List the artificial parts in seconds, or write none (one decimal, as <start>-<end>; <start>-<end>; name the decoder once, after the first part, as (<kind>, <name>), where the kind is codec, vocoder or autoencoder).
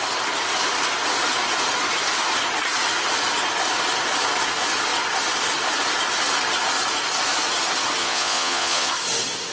8.0-8.9 (vocoder, Vocos)